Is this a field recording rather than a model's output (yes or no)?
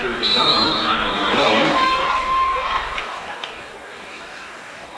no